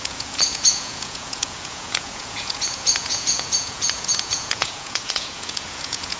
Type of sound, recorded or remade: remade